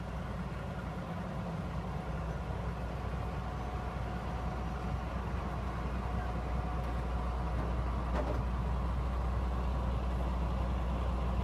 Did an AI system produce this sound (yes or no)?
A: no